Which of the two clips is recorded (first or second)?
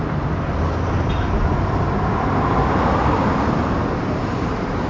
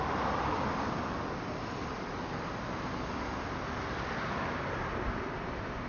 second